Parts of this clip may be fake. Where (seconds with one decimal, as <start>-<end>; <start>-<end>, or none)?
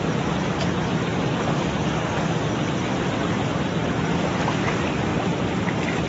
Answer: 1.1-2.4